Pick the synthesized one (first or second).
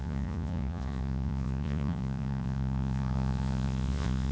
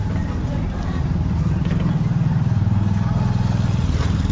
first